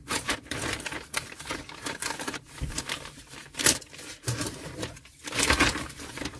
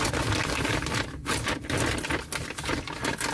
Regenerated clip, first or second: first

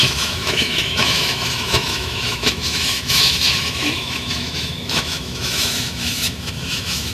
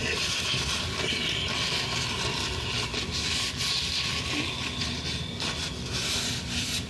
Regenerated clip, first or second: first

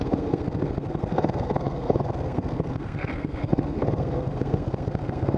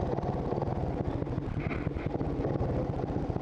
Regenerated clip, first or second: first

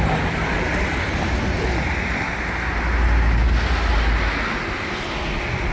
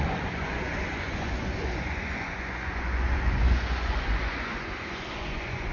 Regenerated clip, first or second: second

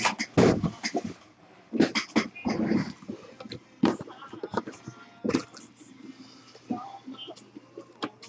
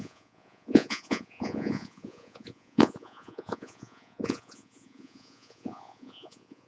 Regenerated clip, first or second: second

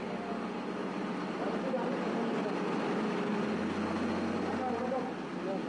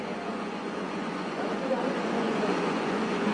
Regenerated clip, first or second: second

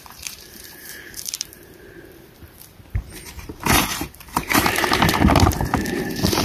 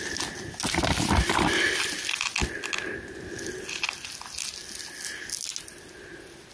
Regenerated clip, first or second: first